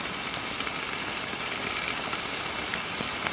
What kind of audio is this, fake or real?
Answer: fake